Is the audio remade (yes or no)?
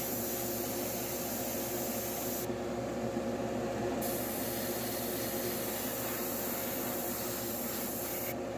no